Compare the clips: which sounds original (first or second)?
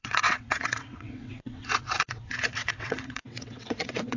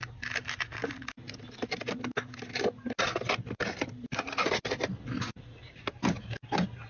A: second